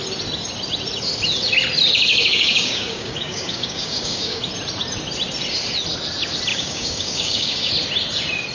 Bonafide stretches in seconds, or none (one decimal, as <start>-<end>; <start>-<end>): 0.0-2.1; 4.4-6.5; 7.7-8.5